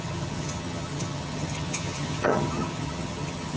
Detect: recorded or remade remade